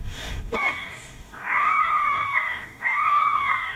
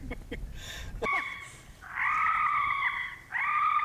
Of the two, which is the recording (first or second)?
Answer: second